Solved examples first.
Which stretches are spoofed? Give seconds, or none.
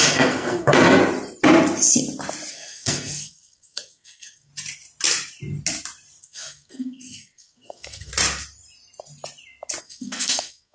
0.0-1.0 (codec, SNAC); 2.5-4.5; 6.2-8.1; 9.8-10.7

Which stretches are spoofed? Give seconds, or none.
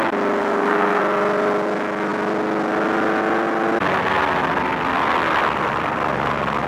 0.4-1.0 (codec, SNAC)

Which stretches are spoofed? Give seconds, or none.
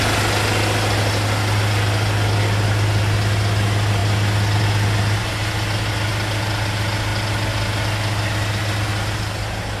none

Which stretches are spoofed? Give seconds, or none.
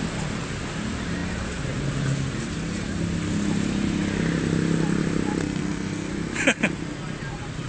5.4-6.1 (codec, SNAC)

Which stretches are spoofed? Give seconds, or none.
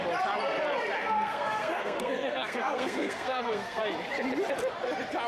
1.0-3.8 (codec, SNAC)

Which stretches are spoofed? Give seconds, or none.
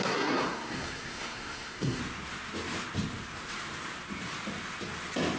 0.0-2.0 (codec, SNAC)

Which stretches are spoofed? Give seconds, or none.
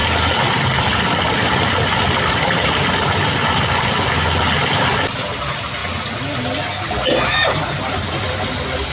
none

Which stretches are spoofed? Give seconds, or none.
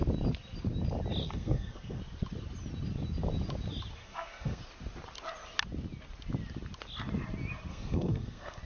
1.2-2.0 (codec, SNAC); 4.0-4.6; 7.7-8.6